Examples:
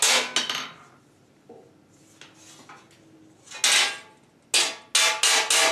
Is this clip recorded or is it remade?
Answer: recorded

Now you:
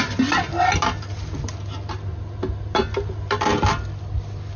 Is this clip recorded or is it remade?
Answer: recorded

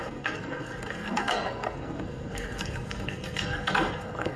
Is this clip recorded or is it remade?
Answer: remade